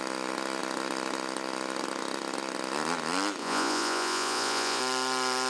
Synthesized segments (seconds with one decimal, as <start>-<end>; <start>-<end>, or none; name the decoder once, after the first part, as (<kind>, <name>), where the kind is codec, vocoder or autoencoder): 3.4-4.8 (vocoder, Vocos)